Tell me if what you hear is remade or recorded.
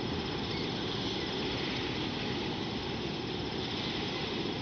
recorded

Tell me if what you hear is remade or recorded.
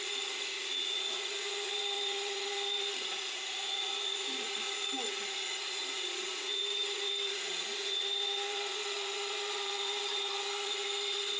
remade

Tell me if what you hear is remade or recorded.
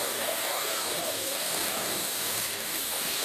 remade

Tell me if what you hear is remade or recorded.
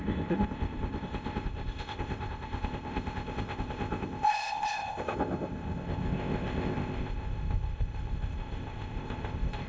remade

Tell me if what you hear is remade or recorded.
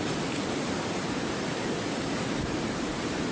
remade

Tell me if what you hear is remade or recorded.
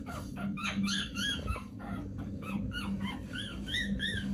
remade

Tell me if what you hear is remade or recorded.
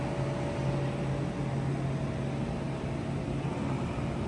recorded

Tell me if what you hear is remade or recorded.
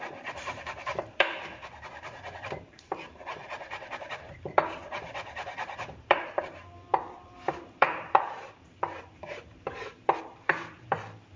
remade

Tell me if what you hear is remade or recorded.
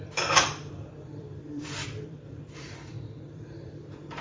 remade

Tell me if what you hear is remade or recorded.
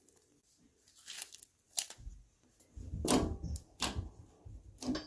recorded